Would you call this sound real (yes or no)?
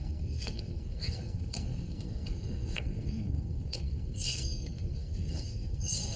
no